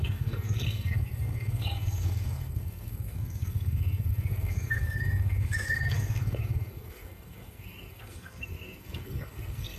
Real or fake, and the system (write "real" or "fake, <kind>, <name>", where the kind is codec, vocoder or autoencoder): fake, codec, SNAC